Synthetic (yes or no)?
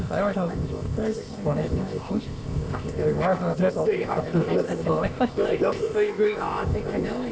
yes